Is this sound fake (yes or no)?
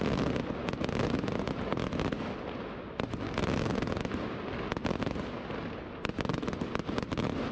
no